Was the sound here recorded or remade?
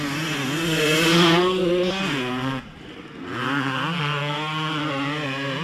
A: recorded